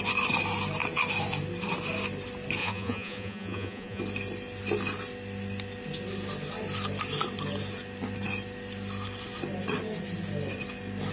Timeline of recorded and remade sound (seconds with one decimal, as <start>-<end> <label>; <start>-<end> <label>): 0.0-2.6 recorded; 2.6-4.0 remade; 4.0-11.1 recorded